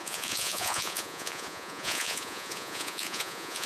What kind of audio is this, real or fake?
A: fake